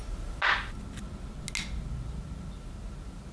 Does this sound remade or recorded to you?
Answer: recorded